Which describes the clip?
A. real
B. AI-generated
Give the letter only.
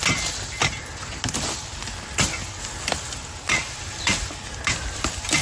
A